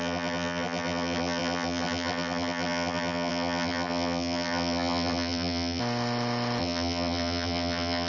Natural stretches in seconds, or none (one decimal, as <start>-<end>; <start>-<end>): 5.8-6.6